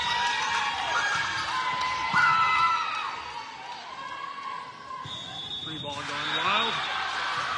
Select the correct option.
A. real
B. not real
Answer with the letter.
A